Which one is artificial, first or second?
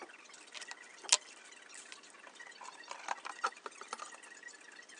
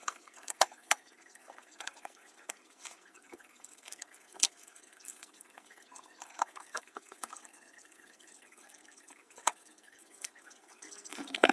second